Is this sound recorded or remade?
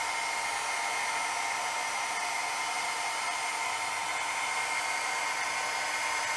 recorded